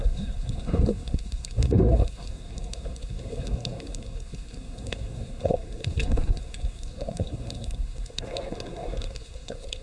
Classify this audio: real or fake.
fake